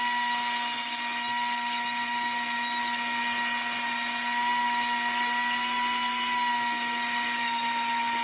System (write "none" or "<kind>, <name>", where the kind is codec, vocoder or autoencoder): none